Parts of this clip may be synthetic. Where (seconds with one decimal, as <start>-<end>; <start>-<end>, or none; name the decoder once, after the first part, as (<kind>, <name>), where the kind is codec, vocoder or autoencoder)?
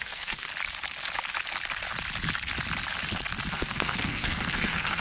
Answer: 0.0-0.5 (codec, SNAC); 3.5-5.0